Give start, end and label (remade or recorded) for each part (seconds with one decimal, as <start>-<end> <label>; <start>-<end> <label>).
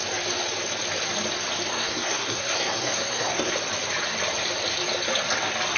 0.0-1.7 recorded; 1.7-3.5 remade; 3.5-5.8 recorded